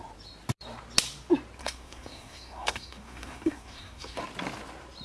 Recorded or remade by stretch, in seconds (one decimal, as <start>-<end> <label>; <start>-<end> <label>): 0.0-1.6 recorded; 1.6-4.2 remade; 4.2-5.0 recorded

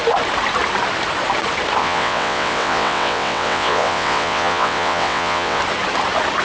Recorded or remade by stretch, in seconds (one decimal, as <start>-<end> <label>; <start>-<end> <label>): 0.0-1.8 recorded; 1.8-5.6 remade; 5.6-6.4 recorded

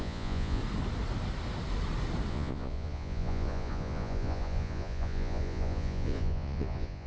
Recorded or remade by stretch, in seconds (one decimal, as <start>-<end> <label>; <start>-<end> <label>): 0.0-0.6 remade; 0.6-2.3 recorded; 2.3-7.1 remade

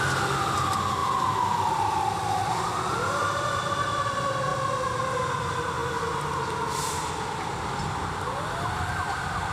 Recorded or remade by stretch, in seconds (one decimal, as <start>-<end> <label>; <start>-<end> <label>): 0.0-9.5 recorded